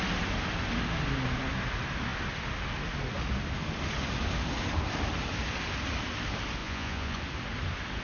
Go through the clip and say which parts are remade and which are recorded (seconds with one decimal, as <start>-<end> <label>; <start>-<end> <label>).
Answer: 0.0-6.6 recorded; 6.6-7.2 remade; 7.2-8.0 recorded